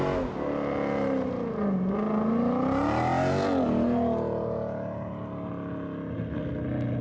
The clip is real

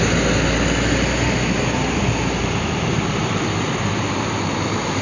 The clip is real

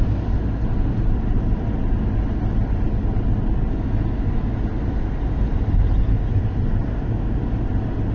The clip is real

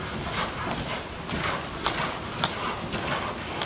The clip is real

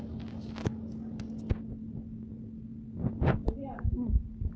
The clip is real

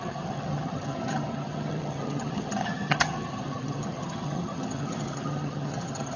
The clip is fake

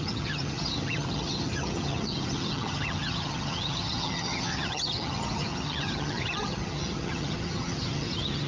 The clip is fake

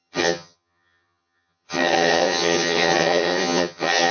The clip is fake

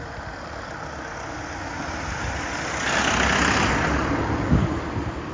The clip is real